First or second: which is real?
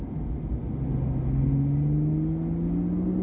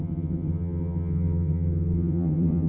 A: first